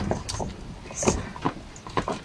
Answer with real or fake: real